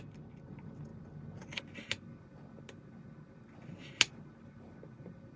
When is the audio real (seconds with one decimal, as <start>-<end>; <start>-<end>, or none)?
0.0-5.4